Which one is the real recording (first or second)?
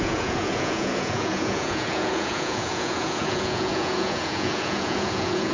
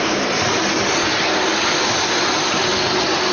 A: second